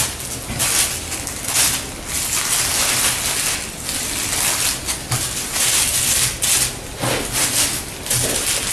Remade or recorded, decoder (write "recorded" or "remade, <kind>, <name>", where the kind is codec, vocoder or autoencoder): recorded